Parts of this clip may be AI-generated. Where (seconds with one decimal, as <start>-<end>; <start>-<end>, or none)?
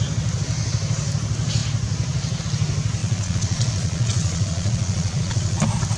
3.0-5.6